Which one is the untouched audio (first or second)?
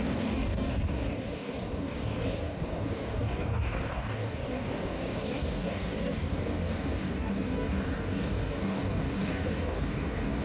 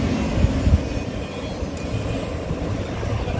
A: second